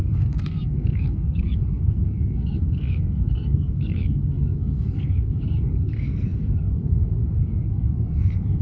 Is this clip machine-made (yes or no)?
yes